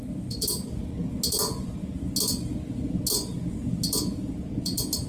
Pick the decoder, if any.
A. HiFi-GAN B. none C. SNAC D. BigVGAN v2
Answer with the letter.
B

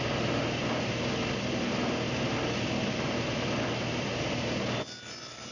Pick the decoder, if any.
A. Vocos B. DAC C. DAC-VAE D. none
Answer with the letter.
D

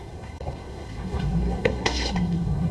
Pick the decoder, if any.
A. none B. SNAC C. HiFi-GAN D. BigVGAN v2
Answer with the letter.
B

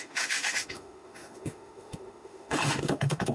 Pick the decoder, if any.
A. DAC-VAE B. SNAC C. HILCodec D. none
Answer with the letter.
A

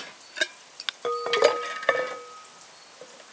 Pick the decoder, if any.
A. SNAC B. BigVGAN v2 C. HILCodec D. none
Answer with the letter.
D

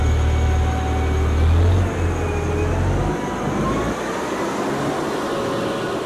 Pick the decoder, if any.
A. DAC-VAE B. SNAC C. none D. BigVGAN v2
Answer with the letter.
C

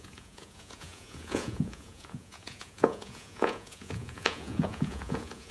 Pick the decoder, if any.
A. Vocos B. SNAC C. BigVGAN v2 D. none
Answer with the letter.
A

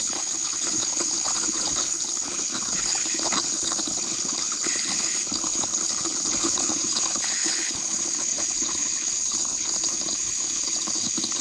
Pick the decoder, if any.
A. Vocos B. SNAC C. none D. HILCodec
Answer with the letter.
D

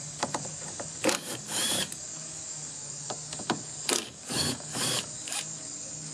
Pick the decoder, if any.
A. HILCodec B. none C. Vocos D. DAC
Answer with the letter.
D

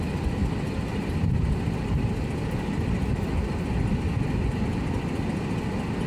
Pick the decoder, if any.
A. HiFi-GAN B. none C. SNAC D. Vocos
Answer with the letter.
B